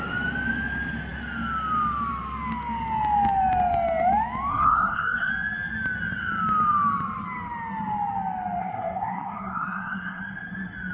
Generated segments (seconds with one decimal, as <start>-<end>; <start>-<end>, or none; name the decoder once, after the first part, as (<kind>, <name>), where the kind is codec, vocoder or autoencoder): 4.5-5.3 (codec, SNAC); 8.6-10.2